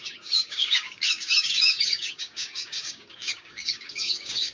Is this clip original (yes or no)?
no